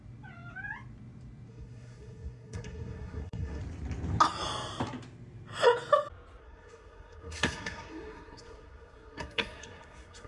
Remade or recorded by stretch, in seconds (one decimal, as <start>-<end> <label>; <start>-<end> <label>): 0.0-1.5 recorded; 1.5-3.6 remade; 3.6-6.4 recorded; 6.4-10.3 remade